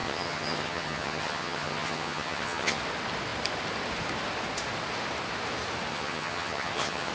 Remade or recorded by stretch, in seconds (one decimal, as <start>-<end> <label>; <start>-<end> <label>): 0.0-2.8 remade; 2.8-5.9 recorded; 5.9-7.1 remade